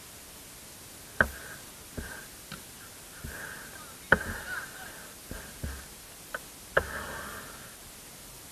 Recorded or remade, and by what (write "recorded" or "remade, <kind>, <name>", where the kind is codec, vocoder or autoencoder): recorded